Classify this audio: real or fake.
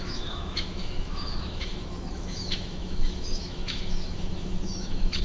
fake